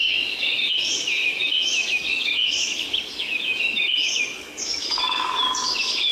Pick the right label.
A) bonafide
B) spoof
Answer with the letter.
B